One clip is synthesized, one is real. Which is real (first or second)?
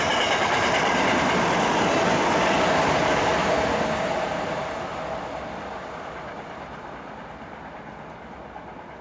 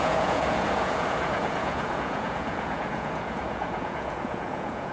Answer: first